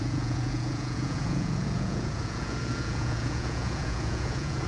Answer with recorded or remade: remade